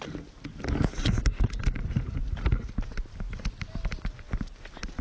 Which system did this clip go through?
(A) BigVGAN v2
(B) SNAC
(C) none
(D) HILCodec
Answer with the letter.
C